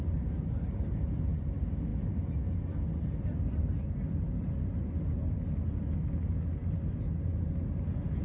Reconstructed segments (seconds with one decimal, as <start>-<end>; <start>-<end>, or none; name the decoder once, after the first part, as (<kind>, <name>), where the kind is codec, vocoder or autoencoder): none